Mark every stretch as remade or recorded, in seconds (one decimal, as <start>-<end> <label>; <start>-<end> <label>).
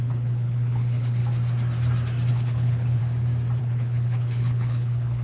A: 0.0-1.2 remade; 1.2-2.3 recorded; 2.3-3.0 remade; 3.0-3.6 recorded; 3.6-5.2 remade